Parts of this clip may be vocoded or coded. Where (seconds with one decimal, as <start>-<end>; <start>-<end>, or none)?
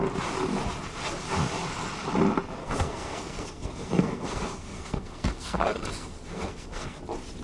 2.6-7.0